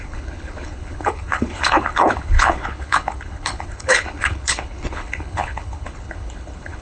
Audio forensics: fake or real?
fake